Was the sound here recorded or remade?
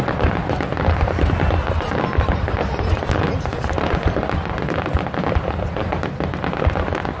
recorded